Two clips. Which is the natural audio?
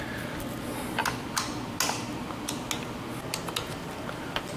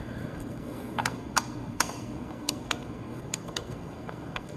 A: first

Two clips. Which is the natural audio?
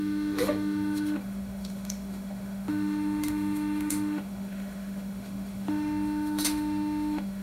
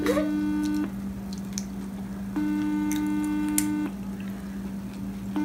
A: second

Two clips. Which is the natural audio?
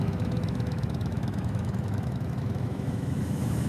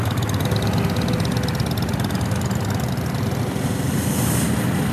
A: second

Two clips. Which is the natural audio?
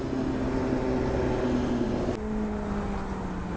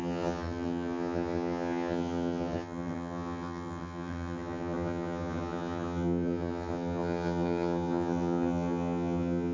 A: first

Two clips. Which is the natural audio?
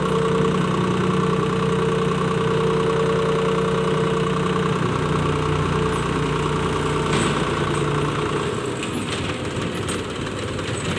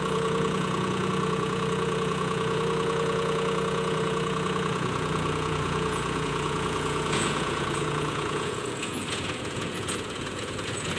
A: first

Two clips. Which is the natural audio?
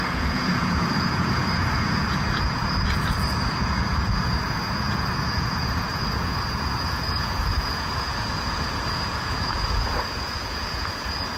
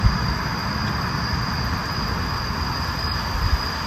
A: second